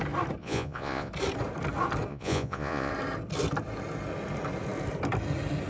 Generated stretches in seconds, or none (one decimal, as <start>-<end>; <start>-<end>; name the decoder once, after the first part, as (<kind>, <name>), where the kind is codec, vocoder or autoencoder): 0.4-1.1 (vocoder, Vocos); 2.1-2.9